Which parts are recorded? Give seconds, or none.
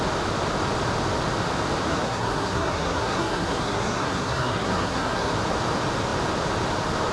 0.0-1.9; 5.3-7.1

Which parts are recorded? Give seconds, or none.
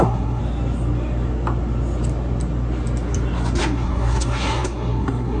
0.4-3.6